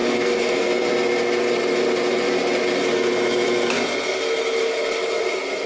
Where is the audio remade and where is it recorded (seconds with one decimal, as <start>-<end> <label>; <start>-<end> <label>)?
0.0-0.9 remade; 0.9-5.7 recorded